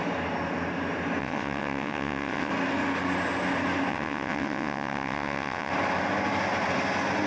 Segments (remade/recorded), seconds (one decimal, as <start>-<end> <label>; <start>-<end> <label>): 0.0-1.2 recorded; 1.2-2.5 remade; 2.5-3.9 recorded; 3.9-5.7 remade; 5.7-7.3 recorded